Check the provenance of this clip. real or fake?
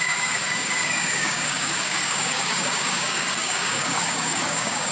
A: fake